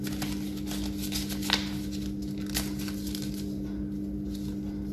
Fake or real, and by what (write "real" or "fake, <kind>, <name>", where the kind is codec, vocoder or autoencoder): real